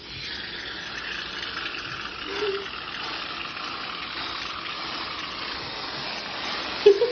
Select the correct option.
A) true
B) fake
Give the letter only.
A